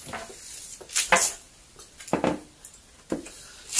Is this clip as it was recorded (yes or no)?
yes